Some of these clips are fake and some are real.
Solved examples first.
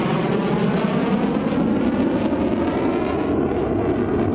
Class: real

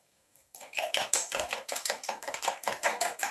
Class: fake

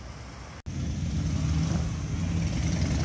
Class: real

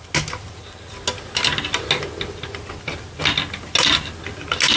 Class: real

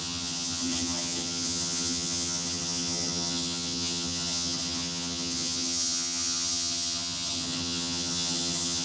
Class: fake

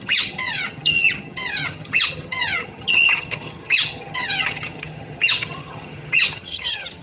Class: fake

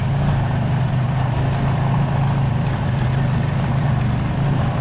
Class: fake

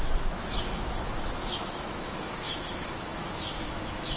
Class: fake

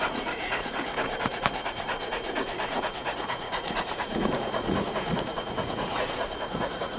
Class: fake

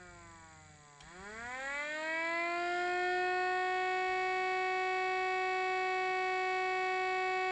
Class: real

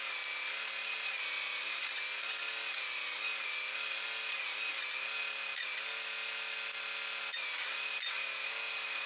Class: real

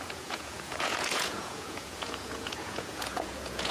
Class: fake